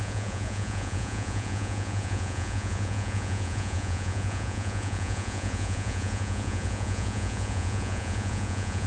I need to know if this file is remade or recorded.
remade